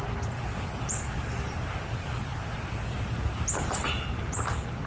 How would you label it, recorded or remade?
recorded